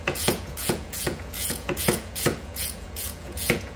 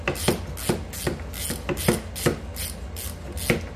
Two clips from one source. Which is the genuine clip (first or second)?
second